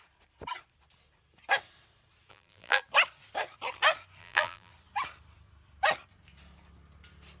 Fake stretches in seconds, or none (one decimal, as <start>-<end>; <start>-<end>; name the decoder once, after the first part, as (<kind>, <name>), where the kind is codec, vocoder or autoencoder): 2.3-2.8 (vocoder, BigVGAN v2); 4.2-4.7